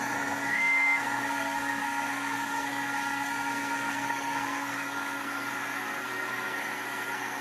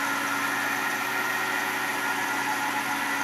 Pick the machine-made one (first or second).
first